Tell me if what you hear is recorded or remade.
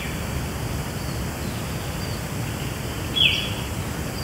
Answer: recorded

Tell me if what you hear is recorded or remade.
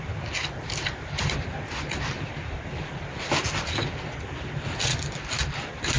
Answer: recorded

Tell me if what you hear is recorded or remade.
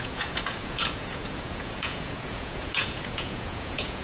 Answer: remade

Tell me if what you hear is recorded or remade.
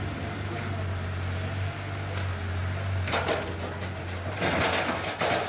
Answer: recorded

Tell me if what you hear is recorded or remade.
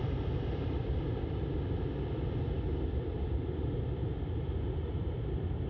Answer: recorded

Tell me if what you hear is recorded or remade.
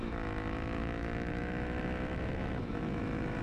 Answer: remade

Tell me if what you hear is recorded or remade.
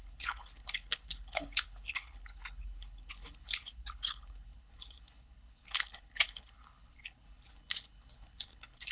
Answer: remade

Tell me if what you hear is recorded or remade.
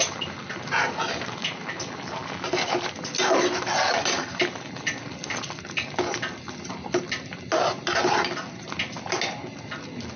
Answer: recorded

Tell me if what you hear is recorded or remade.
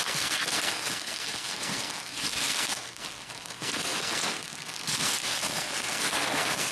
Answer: remade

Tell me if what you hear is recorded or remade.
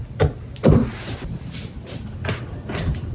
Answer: recorded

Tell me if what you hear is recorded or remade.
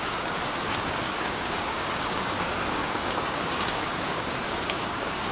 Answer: remade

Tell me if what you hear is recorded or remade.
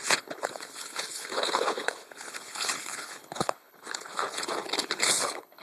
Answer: remade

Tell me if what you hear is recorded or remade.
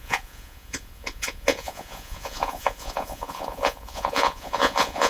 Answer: remade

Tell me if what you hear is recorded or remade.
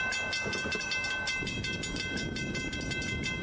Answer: recorded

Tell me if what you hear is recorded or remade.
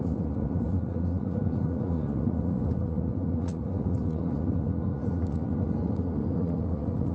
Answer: remade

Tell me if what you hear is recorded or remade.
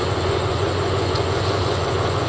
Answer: remade